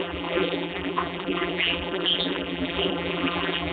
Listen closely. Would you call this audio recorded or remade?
remade